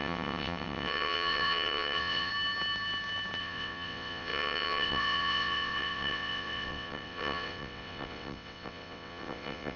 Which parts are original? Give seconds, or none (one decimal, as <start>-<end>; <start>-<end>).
2.3-3.4